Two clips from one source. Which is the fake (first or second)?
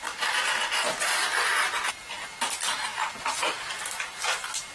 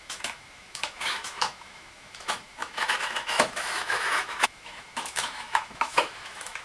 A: second